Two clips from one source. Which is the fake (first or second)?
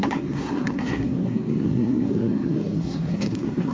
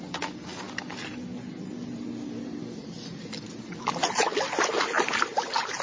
first